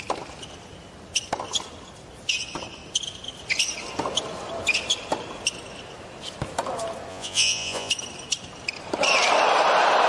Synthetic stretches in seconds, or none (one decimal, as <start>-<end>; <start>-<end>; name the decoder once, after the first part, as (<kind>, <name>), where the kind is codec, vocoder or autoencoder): 7.1-7.9 (vocoder, Vocos)